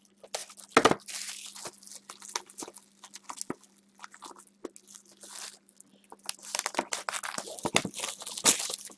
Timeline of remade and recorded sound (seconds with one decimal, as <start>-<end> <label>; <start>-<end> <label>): 0.0-9.0 recorded